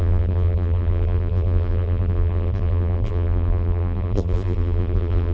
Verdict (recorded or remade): remade